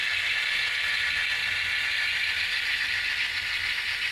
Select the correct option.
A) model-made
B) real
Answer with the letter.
B